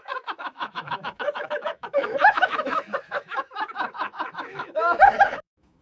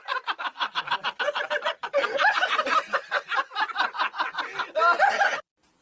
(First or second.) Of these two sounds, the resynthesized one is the first